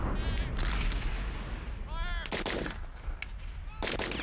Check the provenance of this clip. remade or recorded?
recorded